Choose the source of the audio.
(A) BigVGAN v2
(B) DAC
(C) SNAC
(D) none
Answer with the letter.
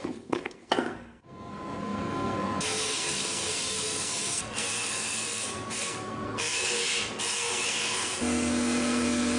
C